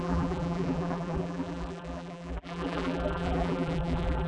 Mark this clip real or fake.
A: fake